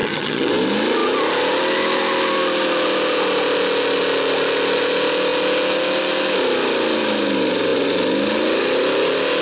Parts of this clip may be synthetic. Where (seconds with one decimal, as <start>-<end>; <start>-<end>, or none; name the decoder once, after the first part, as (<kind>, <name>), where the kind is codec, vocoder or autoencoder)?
0.0-0.5 (vocoder, HiFi-GAN)